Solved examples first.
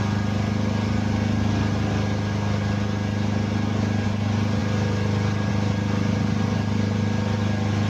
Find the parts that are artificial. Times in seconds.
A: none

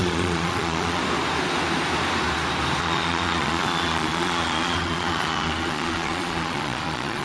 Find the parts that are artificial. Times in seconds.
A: 0.0-1.0 (vocoder, Vocos); 2.8-7.2

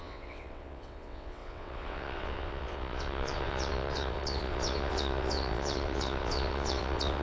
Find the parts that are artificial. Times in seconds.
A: 0.0-7.2 (vocoder, WaveNeXt)

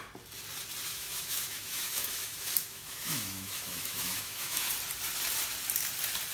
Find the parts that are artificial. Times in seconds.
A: 0.9-4.7 (autoencoder, DAC-VAE)

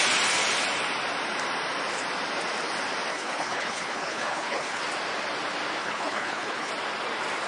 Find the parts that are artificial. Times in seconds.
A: 3.1-4.8 (codec, HILCodec); 5.8-6.7

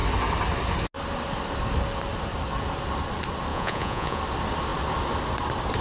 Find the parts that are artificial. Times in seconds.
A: 3.5-4.2 (vocoder, Vocos)

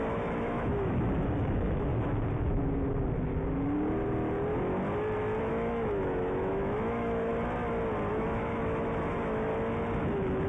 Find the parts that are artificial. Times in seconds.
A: 0.0-1.9 (autoencoder, DAC-VAE); 5.5-7.3; 8.1-9.5; 10.0-10.5